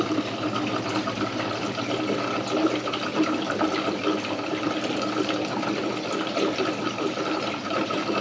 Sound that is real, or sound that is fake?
real